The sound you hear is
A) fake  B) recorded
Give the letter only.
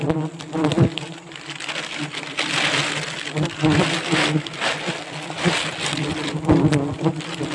B